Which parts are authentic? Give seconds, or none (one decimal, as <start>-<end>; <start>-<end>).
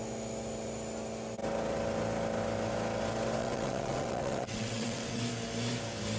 0.0-3.4; 5.2-6.2